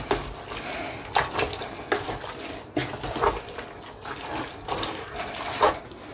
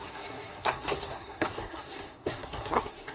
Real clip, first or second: first